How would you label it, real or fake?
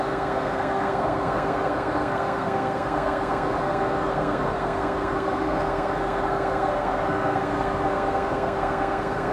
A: fake